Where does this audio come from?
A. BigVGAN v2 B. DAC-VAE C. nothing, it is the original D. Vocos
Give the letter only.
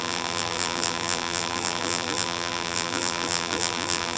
A